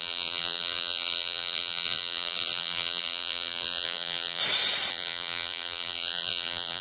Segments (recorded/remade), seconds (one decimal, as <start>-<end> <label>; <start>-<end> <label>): 0.0-4.4 remade; 4.4-4.9 recorded; 4.9-6.8 remade